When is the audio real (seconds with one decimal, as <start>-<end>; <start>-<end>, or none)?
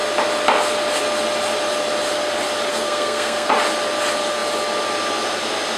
0.0-2.7; 3.5-5.8